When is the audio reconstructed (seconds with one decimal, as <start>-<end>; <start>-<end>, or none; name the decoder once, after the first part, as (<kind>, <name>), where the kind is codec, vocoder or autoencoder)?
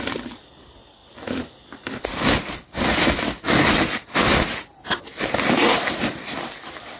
none